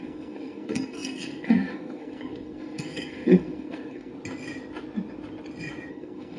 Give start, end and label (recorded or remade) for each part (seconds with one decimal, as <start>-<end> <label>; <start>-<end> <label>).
0.0-4.1 remade; 4.1-5.9 recorded; 5.9-6.4 remade